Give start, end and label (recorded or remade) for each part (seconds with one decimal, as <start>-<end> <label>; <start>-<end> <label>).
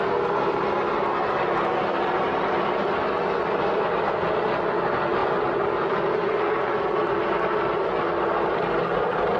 0.0-9.4 recorded